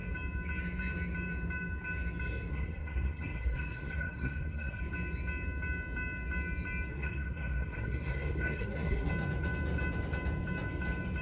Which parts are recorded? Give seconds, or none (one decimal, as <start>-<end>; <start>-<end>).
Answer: 0.0-2.5; 4.8-6.9; 9.1-11.2